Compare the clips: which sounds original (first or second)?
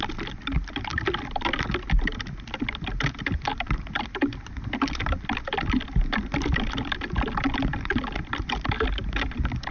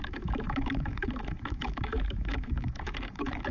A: first